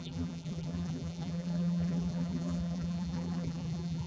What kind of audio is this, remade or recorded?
remade